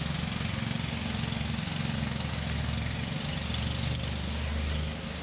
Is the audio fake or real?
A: real